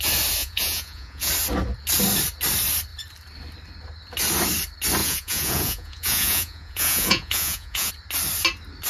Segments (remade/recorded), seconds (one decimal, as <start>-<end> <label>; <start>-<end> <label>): 0.0-0.4 recorded; 0.4-1.3 remade; 1.3-5.0 recorded; 5.0-7.9 remade; 7.9-8.9 recorded